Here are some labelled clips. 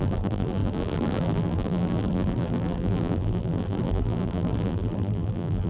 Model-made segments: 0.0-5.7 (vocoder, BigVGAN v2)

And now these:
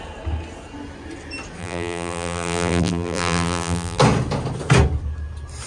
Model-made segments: 1.6-4.0 (vocoder, BigVGAN v2)

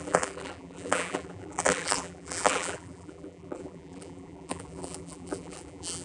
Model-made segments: 0.0-6.0 (vocoder, BigVGAN v2)

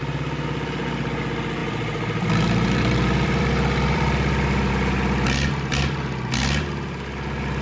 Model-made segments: 1.6-4.7 (vocoder, BigVGAN v2)

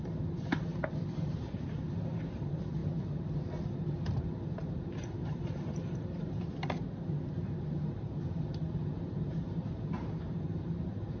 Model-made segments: 0.0-0.7 (vocoder, BigVGAN v2); 1.5-2.8; 4.2-11.2